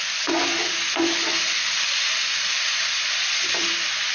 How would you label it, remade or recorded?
recorded